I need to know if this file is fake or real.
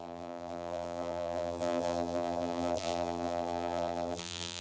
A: fake